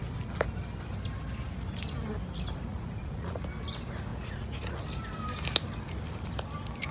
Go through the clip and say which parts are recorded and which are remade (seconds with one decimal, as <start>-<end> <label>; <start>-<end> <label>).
0.0-2.7 recorded; 2.7-3.4 remade; 3.4-4.1 recorded; 4.1-4.8 remade; 4.8-6.9 recorded